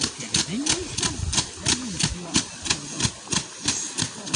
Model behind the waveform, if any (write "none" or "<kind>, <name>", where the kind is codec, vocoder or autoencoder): none